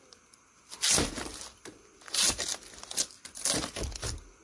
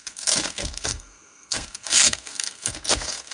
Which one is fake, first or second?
second